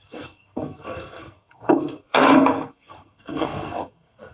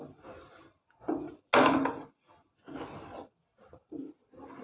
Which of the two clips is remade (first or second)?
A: first